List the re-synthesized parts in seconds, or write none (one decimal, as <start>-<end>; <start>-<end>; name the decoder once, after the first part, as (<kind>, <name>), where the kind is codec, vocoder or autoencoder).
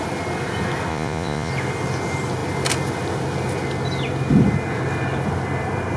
0.9-1.5 (vocoder, Vocos)